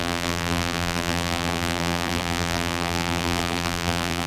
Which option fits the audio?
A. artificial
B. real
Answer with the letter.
A